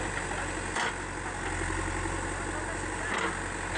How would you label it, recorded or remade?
recorded